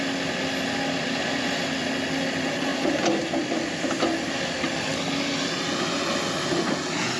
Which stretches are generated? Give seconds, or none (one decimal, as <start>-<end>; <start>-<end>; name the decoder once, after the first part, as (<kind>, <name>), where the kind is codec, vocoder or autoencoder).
2.7-3.2 (vocoder, BigVGAN v2)